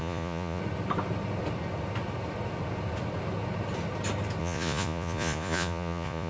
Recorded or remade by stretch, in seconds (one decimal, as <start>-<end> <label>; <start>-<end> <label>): 0.0-0.6 remade; 0.6-4.4 recorded; 4.4-6.3 remade